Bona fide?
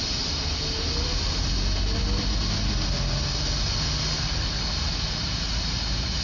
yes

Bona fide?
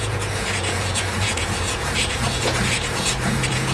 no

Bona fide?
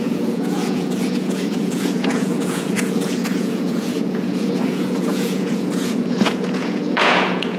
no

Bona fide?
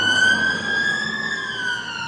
yes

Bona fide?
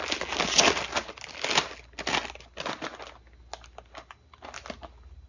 yes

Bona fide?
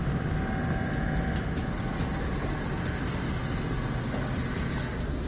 yes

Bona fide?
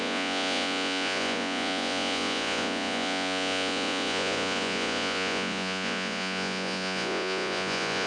no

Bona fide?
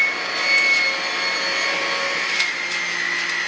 yes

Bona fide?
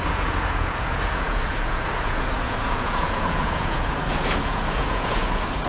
no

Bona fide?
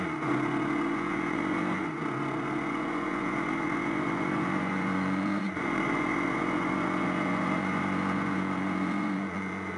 no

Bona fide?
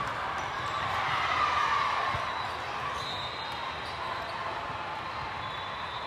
yes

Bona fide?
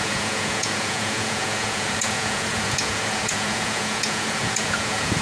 no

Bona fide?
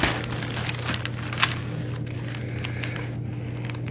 yes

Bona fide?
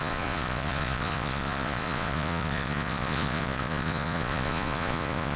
no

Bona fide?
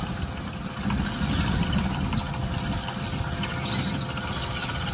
yes